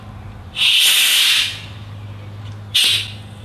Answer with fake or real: real